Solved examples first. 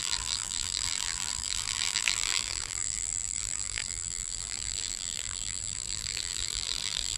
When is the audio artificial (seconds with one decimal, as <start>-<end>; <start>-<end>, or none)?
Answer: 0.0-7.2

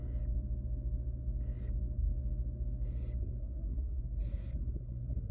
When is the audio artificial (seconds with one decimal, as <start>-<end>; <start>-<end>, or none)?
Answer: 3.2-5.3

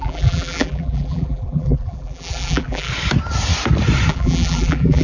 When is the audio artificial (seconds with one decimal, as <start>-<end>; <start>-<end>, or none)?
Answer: 0.0-2.9; 4.1-5.0

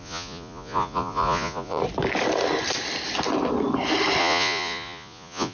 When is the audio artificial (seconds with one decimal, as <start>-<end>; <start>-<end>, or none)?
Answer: 0.0-1.8; 4.2-5.5

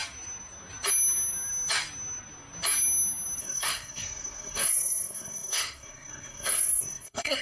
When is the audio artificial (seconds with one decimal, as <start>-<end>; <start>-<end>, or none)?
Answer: 3.4-7.4